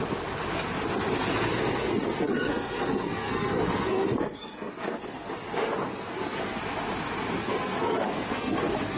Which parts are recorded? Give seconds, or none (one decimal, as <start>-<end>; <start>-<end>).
0.0-1.8; 5.3-5.9; 6.6-7.4